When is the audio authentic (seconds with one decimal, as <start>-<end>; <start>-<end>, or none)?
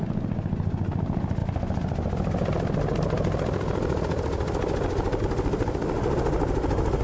0.0-7.0